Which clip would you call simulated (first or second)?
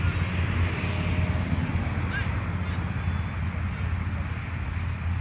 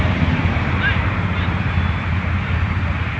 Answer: second